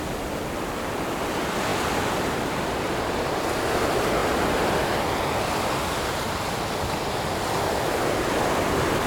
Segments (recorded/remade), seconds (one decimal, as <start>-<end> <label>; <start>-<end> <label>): 0.0-4.2 remade; 4.2-7.4 recorded; 7.4-9.1 remade